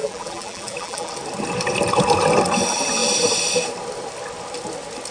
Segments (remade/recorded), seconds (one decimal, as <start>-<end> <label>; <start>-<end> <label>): 0.0-1.1 remade; 1.1-5.1 recorded